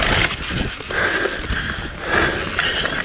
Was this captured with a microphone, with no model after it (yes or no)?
yes